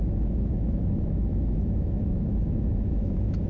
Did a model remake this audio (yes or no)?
yes